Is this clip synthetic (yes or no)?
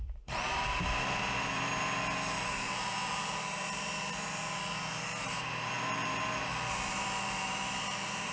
yes